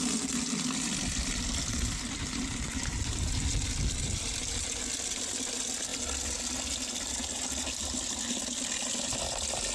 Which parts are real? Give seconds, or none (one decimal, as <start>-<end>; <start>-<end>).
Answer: 0.0-9.7